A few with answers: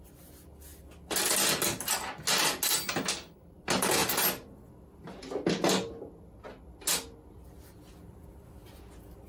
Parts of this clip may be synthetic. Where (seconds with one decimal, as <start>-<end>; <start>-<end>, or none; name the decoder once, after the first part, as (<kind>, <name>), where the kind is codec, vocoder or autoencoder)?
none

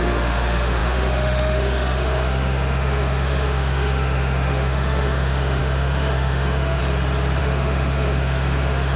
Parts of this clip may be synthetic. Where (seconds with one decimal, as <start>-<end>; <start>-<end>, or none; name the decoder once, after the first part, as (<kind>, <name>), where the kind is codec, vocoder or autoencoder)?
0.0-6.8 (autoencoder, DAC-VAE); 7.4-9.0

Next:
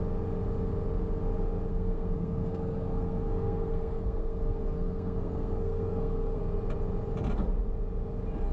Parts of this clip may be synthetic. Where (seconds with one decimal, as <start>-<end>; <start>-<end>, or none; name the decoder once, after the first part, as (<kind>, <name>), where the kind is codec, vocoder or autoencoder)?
1.7-6.4 (codec, SNAC)

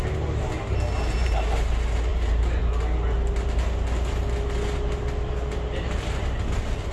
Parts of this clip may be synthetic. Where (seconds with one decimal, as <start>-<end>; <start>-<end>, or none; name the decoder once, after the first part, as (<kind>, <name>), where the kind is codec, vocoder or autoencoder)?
1.2-1.7 (vocoder, BigVGAN v2); 2.1-2.6

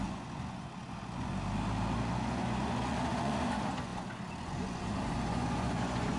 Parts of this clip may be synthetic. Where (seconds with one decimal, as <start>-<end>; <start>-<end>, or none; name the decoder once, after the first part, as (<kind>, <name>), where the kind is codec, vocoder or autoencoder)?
0.0-1.3 (vocoder, Vocos); 2.1-6.2